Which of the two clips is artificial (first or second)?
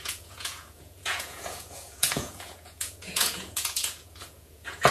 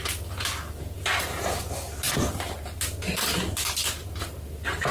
first